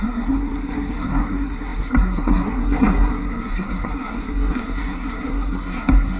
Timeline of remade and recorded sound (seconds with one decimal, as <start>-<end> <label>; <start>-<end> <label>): 0.0-6.2 remade